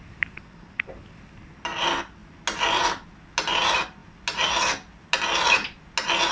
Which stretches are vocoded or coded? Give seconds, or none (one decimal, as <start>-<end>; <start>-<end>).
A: none